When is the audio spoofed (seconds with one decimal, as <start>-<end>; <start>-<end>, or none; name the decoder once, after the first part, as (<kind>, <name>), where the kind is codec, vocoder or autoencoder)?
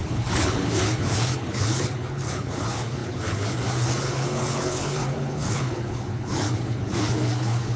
0.0-7.8 (codec, HILCodec)